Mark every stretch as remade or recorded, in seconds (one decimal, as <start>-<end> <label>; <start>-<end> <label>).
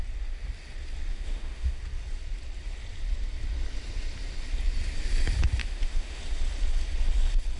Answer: 0.0-1.1 recorded; 1.1-1.8 remade; 1.8-5.6 recorded; 5.6-6.2 remade; 6.2-7.6 recorded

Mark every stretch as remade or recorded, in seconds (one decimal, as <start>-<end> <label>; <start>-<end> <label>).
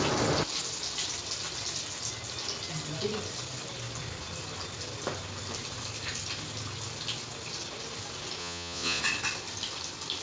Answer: 0.0-8.4 recorded; 8.4-9.0 remade; 9.0-10.2 recorded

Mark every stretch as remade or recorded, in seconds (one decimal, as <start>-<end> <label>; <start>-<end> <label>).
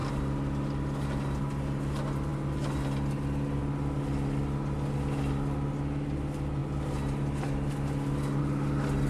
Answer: 0.0-9.1 recorded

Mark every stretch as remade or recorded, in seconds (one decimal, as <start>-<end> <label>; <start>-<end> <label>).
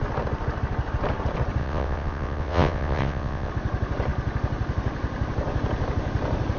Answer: 0.0-1.6 recorded; 1.6-3.5 remade; 3.5-6.6 recorded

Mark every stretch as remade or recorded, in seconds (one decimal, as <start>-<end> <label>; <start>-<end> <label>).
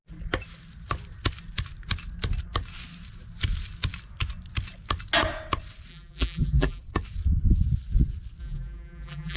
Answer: 0.0-5.9 recorded; 5.9-6.8 remade; 6.8-8.4 recorded; 8.4-9.4 remade